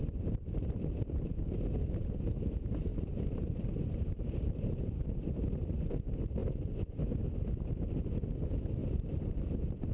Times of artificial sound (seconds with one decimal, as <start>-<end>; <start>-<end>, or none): 2.9-4.8; 8.8-9.4